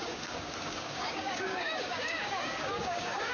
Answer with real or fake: fake